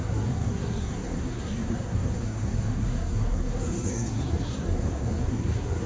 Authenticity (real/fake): fake